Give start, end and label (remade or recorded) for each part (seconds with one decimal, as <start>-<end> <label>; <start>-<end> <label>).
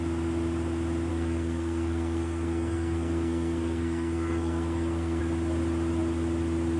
0.0-1.1 recorded; 1.1-5.2 remade; 5.2-6.8 recorded